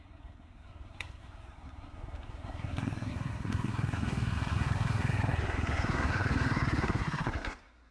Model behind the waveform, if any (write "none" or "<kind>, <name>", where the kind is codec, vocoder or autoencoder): codec, SNAC